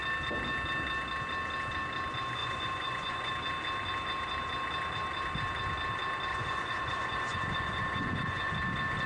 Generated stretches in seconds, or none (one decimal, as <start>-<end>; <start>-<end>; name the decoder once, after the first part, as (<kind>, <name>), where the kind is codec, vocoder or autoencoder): 2.4-3.3 (vocoder, Vocos); 6.3-8.5